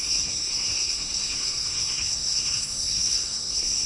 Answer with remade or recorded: remade